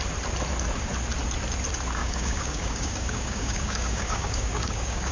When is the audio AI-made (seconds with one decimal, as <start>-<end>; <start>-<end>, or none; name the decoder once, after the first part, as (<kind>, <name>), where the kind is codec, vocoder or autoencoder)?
2.0-5.1 (codec, DAC)